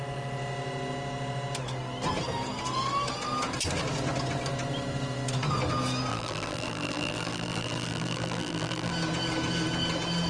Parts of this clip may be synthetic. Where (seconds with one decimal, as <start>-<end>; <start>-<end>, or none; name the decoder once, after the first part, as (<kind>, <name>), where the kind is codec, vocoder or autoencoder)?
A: 6.1-8.9 (vocoder, BigVGAN v2)